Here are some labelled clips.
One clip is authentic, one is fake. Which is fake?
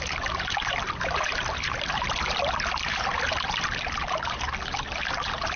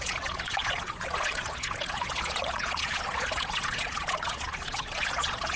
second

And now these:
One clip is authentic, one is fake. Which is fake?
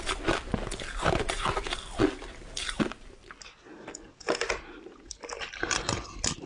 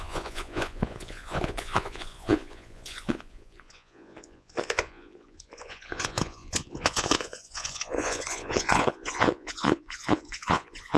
second